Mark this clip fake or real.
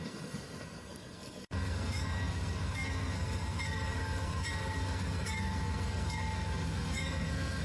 fake